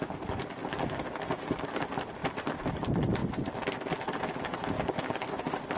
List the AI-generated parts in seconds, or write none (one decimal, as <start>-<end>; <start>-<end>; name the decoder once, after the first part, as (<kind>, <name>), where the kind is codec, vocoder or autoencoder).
0.0-0.6 (vocoder, BigVGAN v2); 1.7-2.2; 2.8-5.8